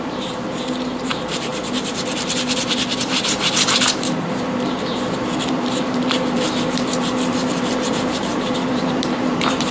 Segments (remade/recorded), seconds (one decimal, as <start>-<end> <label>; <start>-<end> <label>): 0.0-9.7 remade